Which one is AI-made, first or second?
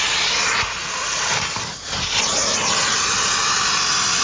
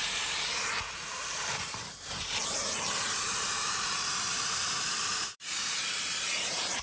second